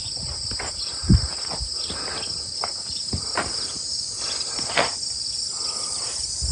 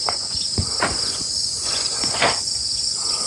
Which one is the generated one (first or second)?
second